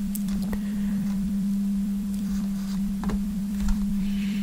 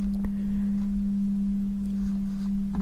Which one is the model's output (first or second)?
first